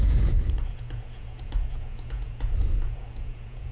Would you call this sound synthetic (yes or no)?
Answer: yes